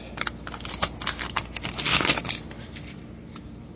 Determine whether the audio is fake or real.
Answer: real